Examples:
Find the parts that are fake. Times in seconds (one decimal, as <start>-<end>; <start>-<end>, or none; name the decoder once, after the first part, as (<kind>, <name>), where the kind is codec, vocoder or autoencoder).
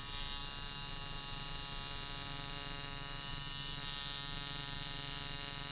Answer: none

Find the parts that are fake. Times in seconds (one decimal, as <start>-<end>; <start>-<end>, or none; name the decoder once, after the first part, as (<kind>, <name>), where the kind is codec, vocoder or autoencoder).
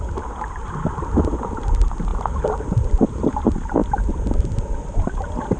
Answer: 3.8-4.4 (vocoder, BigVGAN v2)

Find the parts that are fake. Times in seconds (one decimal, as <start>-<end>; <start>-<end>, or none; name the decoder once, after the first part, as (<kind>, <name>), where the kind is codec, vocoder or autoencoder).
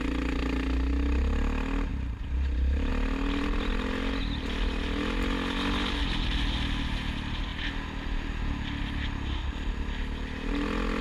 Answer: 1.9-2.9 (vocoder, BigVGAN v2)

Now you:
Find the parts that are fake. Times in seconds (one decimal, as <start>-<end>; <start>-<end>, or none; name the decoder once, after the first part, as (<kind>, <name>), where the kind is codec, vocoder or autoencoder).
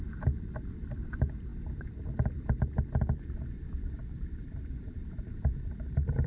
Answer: 0.0-6.3 (vocoder, BigVGAN v2)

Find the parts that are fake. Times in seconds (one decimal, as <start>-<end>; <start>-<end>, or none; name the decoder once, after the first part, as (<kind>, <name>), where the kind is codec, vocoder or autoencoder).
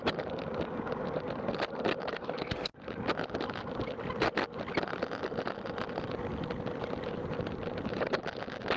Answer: 7.2-8.2 (vocoder, BigVGAN v2)